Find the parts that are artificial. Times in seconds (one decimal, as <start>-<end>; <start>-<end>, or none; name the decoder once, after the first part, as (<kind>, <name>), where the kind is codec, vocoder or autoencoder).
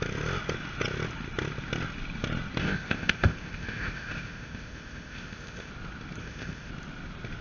2.6-5.7 (codec, ZipCodec); 6.2-6.7